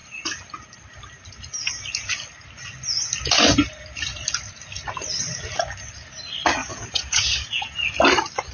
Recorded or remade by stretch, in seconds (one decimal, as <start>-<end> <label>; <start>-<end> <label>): 0.0-6.6 recorded; 6.6-7.9 remade; 7.9-8.5 recorded